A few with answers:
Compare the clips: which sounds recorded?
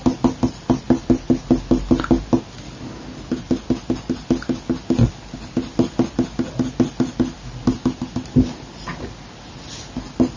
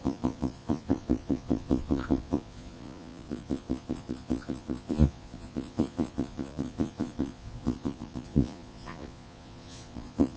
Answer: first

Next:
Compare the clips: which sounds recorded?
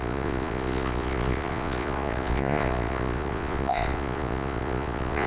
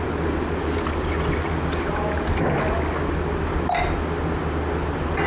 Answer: second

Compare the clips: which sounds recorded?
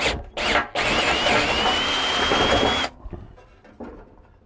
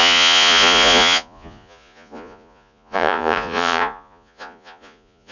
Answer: first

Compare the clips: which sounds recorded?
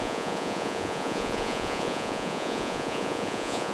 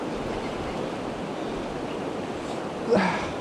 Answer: second